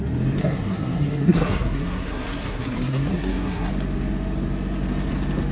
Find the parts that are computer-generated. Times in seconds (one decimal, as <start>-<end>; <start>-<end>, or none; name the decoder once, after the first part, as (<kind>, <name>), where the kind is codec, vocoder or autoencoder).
0.4-3.7 (codec, SNAC)